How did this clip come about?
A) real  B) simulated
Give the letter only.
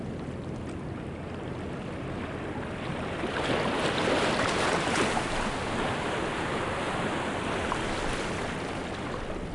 A